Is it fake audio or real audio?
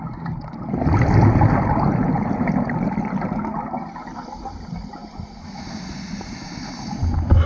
real